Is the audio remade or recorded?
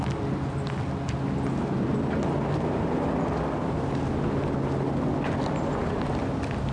recorded